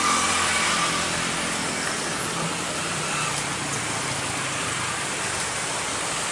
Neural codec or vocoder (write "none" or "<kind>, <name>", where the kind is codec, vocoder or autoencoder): none